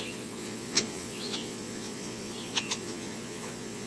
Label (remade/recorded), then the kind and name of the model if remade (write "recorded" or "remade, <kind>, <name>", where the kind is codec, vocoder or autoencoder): remade, vocoder, Vocos